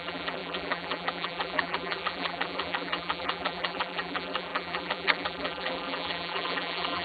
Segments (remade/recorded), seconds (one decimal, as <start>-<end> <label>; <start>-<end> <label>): 0.0-7.0 remade